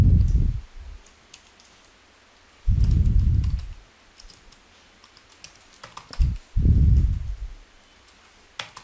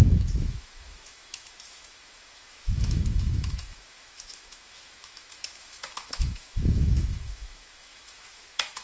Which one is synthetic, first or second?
second